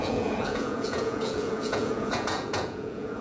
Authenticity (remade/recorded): remade